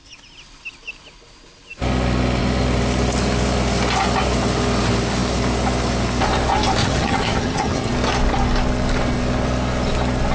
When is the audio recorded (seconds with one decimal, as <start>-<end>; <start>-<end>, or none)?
0.0-6.8; 7.9-10.3